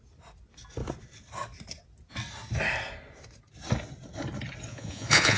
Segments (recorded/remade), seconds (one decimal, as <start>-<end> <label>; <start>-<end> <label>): 0.0-4.7 recorded; 4.7-5.4 remade